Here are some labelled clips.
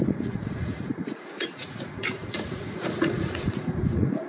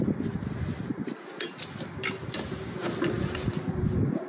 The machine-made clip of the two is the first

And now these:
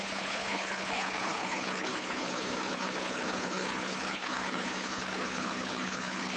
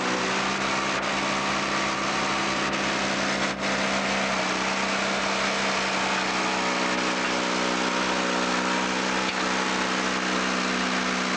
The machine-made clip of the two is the first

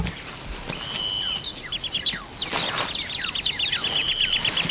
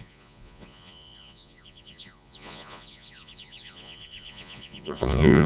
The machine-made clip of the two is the second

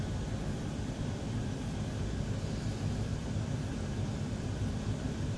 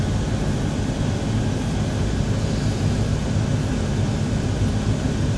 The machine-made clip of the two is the first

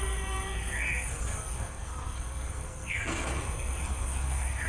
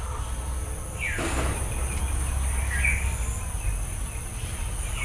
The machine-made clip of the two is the first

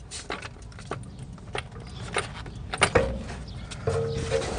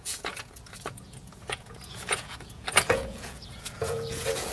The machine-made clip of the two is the second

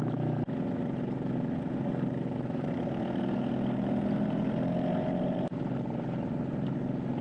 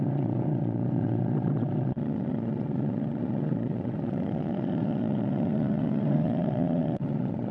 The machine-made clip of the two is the second